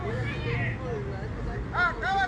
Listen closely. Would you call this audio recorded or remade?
recorded